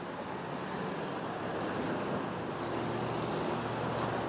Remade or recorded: recorded